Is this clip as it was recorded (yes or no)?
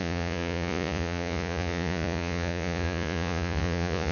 no